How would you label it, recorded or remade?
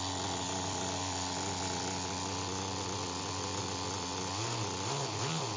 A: recorded